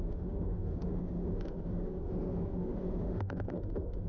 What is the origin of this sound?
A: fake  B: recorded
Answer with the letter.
A